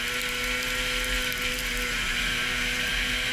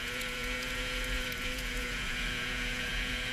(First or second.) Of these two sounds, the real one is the first